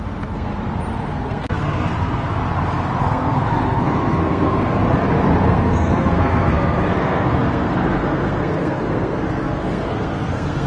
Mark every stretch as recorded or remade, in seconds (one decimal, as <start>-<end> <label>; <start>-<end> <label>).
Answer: 0.0-0.5 remade; 0.5-1.1 recorded; 1.1-2.4 remade; 2.4-3.0 recorded; 3.0-4.8 remade; 4.8-5.4 recorded; 5.4-10.7 remade